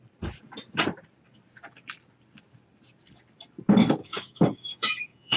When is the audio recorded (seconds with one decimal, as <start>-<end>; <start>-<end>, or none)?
0.0-4.0